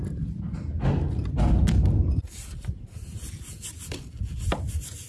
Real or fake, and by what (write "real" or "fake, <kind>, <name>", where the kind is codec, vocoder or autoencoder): real